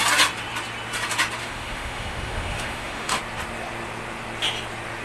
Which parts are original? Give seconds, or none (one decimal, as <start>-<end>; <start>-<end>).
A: 0.0-1.4; 3.2-5.0